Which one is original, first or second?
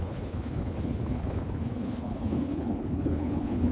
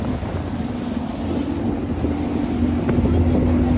second